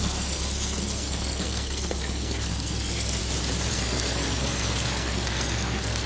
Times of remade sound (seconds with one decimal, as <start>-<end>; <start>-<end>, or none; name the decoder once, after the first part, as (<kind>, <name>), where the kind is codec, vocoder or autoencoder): 0.0-3.2 (codec, SNAC); 3.7-6.1